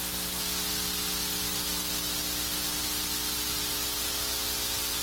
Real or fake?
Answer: real